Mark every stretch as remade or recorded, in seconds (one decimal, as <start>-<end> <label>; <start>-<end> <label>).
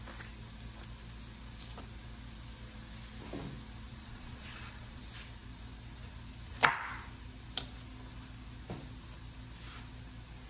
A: 0.0-3.9 recorded; 3.9-5.0 remade; 5.0-10.5 recorded